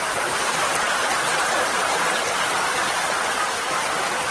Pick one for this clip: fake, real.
real